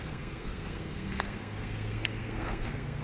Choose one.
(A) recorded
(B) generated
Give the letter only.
B